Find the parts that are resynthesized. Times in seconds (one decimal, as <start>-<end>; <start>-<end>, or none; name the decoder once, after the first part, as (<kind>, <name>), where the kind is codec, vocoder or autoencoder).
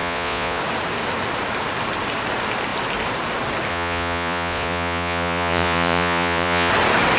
0.0-0.6 (vocoder, Vocos); 3.7-6.7